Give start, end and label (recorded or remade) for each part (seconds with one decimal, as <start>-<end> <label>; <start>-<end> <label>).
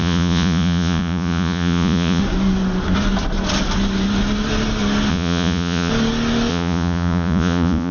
0.0-2.2 remade; 2.2-5.1 recorded; 5.1-5.9 remade; 5.9-6.5 recorded; 6.5-7.9 remade